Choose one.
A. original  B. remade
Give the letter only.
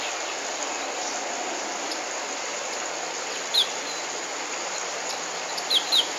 A